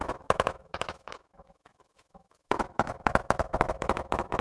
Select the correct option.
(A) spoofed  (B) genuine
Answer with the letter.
A